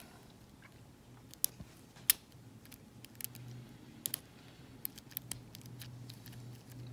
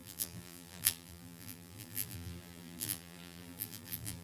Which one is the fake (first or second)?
second